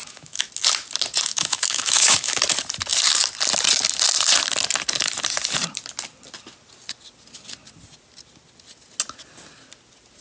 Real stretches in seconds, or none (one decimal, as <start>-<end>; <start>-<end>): 0.5-1.3; 2.4-10.2